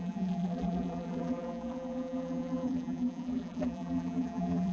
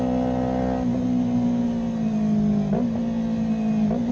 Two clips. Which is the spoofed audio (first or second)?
first